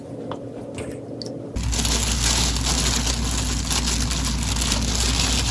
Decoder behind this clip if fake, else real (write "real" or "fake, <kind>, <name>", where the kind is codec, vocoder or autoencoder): real